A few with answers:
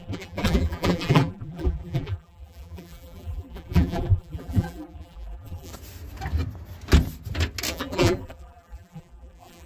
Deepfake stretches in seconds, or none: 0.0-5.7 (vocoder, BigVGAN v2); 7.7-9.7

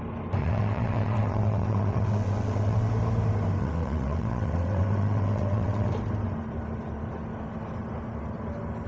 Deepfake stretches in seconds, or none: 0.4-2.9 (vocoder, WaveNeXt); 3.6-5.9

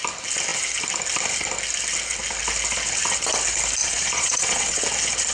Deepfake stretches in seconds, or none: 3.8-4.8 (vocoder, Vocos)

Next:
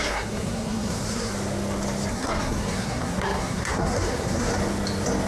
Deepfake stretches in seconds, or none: 0.0-1.3 (codec, SNAC); 2.1-4.5

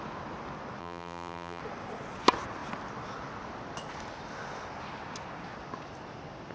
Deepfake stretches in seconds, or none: 0.8-1.6 (vocoder, BigVGAN v2)

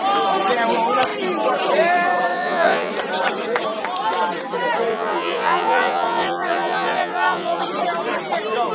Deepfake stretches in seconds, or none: 2.3-2.9 (vocoder, Vocos); 4.9-7.6

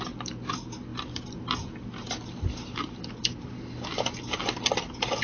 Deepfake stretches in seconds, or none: 0.9-4.0 (vocoder, BigVGAN v2)